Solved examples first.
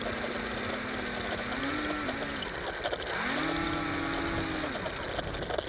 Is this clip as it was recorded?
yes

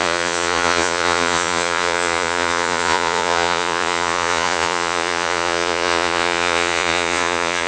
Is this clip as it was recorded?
no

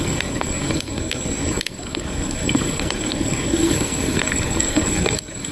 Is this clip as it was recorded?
no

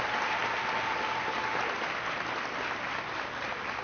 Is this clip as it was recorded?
yes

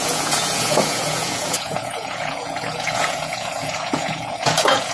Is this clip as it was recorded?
no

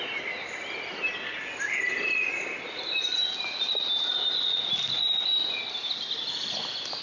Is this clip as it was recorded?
yes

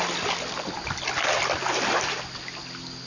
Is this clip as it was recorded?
yes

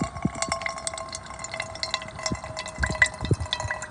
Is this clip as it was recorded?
yes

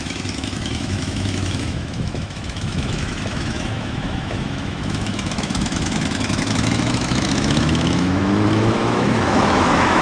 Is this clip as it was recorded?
no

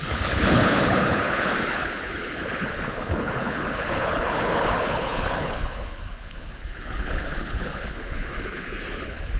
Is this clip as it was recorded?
no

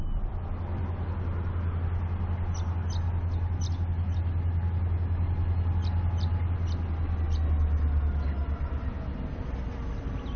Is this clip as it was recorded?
yes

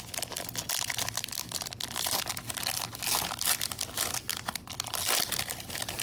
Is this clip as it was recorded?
yes